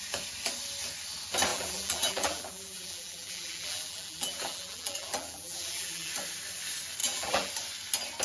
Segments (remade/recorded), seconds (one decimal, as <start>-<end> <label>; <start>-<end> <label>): 0.0-1.5 recorded; 1.5-6.1 remade; 6.1-7.0 recorded; 7.0-7.5 remade; 7.5-8.2 recorded